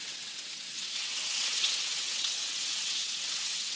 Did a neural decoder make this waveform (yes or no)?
yes